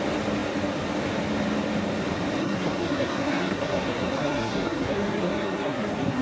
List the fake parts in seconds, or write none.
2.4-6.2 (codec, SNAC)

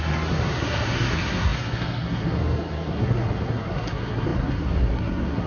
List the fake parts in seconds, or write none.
0.0-5.5 (codec, SNAC)

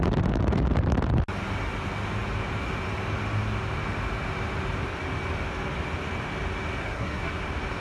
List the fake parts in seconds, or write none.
6.8-7.3 (codec, SNAC)

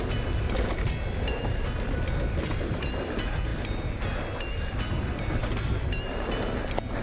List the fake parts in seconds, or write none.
none

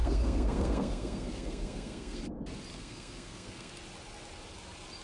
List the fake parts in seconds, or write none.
0.0-2.2 (codec, SNAC); 2.7-3.7

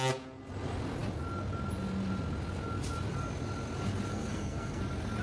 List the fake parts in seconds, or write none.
4.1-4.8 (codec, SNAC)

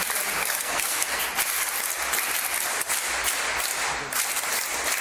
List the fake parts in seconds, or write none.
0.4-1.2 (codec, SNAC)

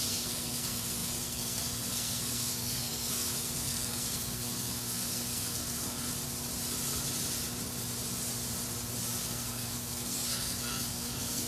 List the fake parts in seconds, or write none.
0.0-6.1 (codec, SNAC); 9.2-11.5